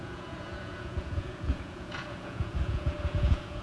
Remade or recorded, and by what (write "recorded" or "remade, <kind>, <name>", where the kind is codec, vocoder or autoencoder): remade, vocoder, Vocos